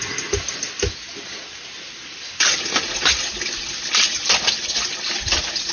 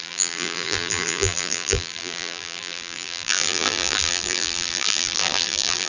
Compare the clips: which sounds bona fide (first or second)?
first